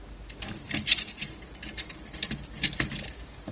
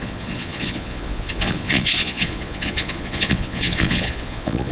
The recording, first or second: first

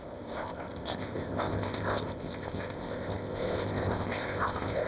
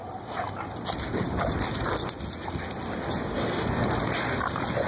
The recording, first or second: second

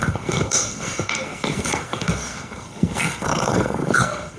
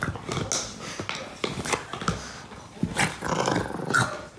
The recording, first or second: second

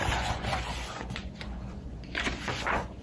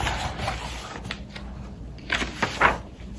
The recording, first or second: second